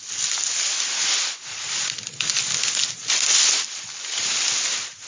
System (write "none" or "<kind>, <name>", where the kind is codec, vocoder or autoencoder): none